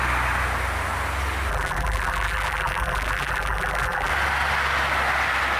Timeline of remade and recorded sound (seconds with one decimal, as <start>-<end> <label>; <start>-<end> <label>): 0.0-1.5 recorded; 1.5-4.1 remade; 4.1-5.6 recorded